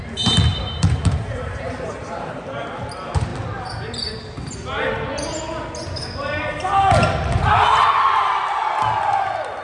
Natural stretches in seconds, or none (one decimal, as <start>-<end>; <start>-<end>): 0.0-0.5; 2.4-9.6